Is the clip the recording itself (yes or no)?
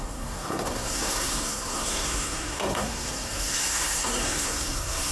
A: no